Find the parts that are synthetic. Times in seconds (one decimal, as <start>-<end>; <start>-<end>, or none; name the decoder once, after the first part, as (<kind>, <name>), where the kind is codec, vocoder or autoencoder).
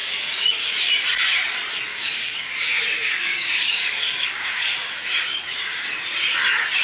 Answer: 0.0-0.7 (codec, DAC); 1.9-6.0